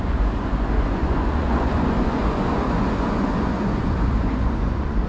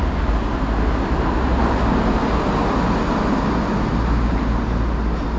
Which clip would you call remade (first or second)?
first